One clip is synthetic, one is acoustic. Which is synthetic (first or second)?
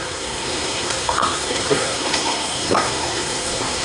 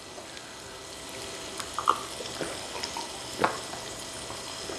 first